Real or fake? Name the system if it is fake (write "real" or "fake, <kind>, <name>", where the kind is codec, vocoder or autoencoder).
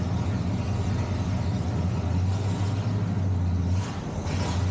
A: real